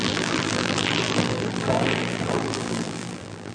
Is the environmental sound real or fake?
fake